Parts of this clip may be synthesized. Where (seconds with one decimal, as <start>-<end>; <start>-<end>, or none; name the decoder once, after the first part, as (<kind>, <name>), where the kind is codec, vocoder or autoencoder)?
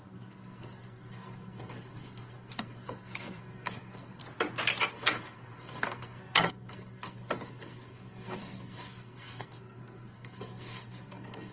0.0-4.2 (codec, SNAC); 4.9-11.5